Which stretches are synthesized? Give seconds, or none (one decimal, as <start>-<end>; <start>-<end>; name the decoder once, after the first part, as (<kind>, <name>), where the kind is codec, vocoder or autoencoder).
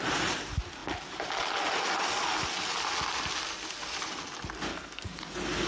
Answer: 4.7-5.3 (codec, SNAC)